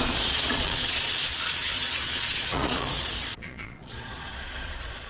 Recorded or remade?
remade